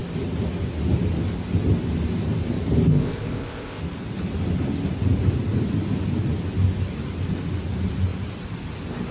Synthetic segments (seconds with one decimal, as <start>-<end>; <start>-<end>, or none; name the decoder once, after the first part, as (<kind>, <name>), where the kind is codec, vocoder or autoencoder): 2.9-3.8 (codec, ZipCodec)